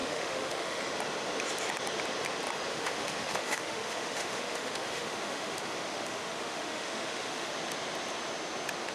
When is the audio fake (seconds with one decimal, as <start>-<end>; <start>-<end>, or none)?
0.0-0.8; 2.7-7.5